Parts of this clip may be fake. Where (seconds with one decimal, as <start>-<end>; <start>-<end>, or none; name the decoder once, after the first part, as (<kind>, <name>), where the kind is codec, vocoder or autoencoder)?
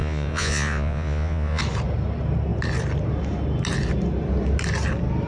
0.0-1.6 (vocoder, Vocos)